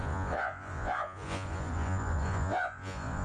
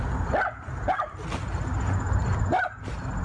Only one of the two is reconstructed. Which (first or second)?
first